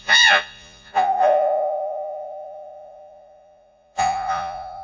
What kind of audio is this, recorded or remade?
remade